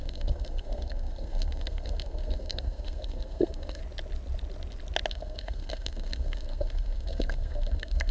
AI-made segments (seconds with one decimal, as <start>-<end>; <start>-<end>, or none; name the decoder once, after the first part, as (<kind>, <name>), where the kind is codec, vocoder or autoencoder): 0.0-3.8 (codec, SNAC); 5.1-8.1